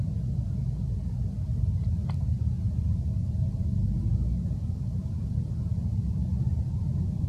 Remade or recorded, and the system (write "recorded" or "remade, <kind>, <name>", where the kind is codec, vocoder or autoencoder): recorded